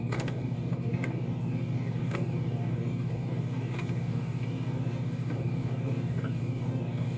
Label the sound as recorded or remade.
remade